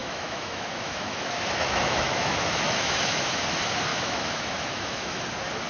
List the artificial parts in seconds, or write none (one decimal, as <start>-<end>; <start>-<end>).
0.0-3.4; 3.9-5.2

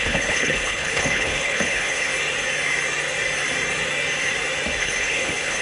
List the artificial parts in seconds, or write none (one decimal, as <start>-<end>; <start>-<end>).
0.0-2.1; 4.8-5.6

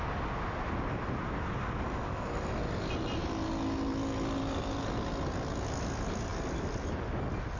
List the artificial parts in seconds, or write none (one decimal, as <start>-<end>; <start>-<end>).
none

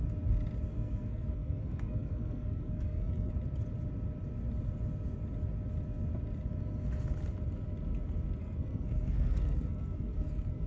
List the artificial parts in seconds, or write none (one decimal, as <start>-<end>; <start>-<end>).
0.7-3.3; 8.4-10.7

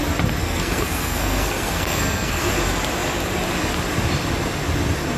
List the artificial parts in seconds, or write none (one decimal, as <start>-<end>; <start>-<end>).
0.4-2.5

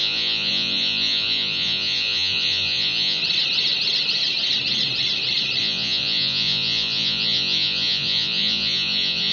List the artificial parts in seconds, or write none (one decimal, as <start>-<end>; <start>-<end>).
0.0-3.2; 5.6-9.3

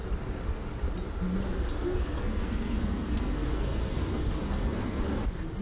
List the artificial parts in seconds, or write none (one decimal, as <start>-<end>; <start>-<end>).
1.8-5.0